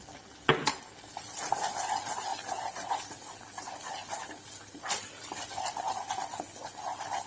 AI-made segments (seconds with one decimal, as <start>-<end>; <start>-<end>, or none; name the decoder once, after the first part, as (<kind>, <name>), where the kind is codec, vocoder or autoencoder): 2.3-2.9 (vocoder, BigVGAN v2)